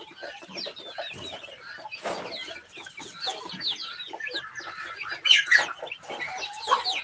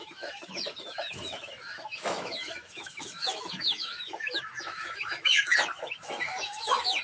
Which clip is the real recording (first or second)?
first